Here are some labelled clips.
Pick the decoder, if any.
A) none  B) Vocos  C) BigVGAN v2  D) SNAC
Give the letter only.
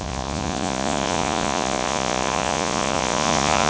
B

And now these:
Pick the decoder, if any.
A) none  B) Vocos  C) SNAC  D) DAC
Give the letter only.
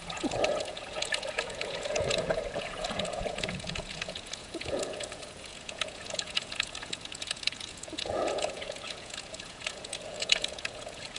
B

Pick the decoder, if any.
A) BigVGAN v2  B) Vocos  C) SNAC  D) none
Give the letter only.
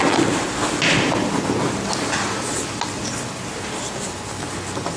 D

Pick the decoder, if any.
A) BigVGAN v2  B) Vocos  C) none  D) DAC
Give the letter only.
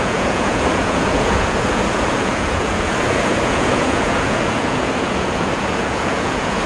B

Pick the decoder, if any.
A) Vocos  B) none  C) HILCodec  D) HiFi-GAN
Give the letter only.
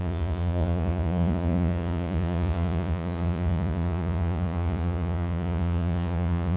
A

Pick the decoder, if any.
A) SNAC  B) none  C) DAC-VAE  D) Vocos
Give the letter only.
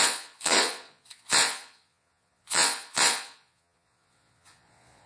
D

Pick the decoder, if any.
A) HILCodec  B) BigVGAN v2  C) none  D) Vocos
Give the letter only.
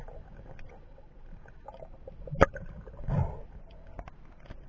C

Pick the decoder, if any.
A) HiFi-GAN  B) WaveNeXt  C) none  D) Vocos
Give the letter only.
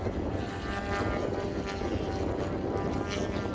C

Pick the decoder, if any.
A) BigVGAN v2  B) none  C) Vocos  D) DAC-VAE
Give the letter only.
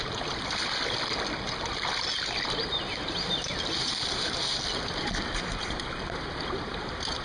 B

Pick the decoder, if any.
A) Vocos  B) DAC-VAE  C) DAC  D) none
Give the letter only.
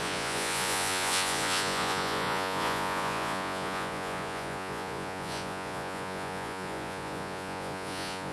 A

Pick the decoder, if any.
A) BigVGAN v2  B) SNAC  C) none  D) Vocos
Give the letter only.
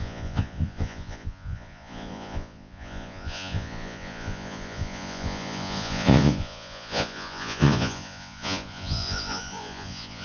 D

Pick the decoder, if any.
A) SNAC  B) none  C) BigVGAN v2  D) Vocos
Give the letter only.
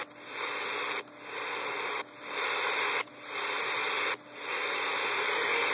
B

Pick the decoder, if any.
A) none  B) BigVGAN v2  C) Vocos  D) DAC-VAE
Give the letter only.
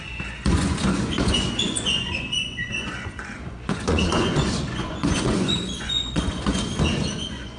C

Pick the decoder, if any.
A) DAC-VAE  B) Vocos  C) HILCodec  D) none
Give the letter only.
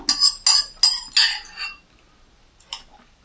D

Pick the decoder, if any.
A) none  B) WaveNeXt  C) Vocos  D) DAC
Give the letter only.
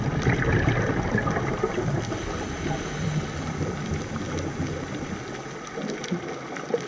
A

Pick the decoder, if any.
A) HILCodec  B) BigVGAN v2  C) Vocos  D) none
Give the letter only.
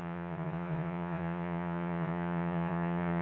C